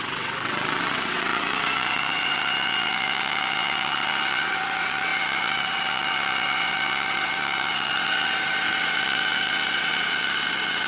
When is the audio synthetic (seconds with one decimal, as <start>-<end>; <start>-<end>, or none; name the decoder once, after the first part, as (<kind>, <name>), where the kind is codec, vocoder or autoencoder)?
0.0-10.9 (vocoder, WaveNeXt)